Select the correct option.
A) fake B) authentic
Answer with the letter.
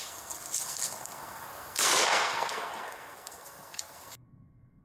A